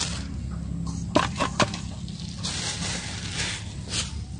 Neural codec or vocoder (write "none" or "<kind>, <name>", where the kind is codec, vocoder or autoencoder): none